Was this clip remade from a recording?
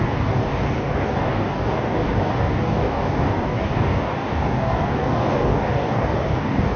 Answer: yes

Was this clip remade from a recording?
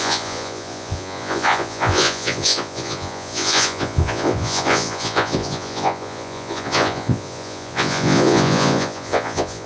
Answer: yes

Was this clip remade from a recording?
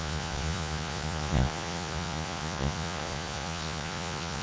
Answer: yes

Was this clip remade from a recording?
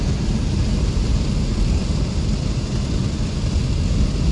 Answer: no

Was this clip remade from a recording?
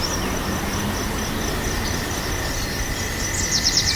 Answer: no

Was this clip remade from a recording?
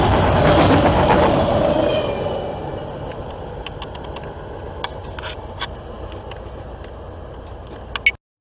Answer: no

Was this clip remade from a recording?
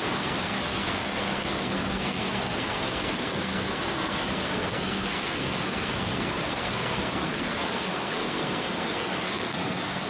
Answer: yes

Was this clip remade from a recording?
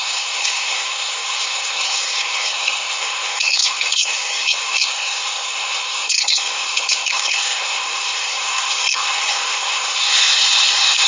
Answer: yes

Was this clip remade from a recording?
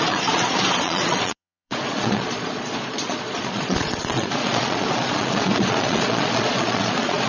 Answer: yes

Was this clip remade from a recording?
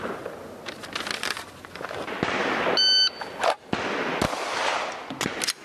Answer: no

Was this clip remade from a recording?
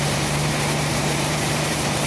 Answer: yes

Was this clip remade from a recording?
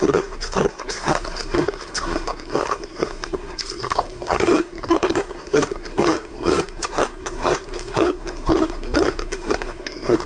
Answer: yes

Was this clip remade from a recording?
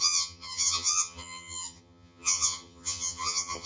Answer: yes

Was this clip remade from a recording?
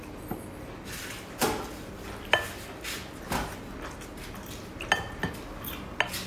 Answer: no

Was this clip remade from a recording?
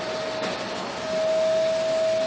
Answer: no